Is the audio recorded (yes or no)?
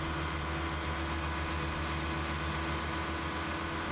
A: yes